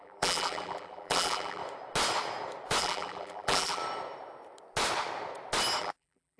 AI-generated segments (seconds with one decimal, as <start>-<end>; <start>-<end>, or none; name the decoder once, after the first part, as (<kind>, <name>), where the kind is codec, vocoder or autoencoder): 0.0-1.6 (vocoder, BigVGAN v2); 2.8-3.8; 5.8-6.4